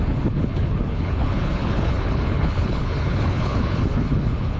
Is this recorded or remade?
remade